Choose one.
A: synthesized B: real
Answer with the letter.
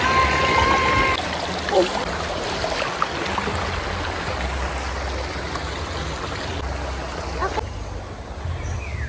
B